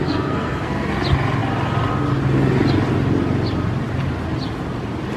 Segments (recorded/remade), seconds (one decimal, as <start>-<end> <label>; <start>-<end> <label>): 0.0-0.9 remade; 0.9-5.2 recorded